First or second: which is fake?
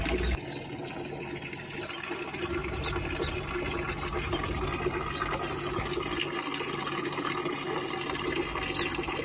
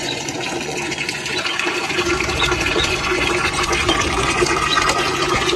second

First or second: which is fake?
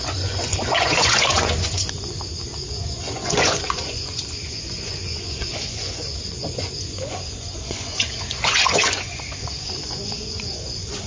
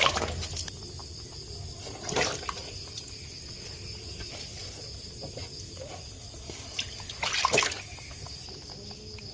first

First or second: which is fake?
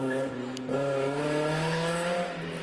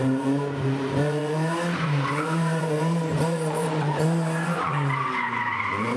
second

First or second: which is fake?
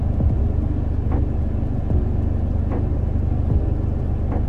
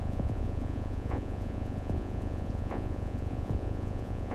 second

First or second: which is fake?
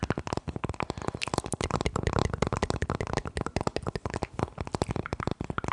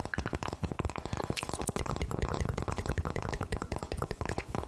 second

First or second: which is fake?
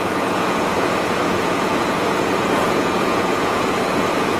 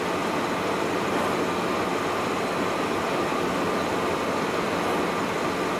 first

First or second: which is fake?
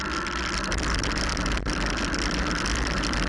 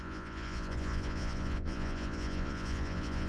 second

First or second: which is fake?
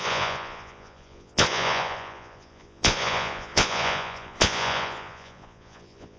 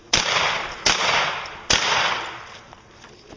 first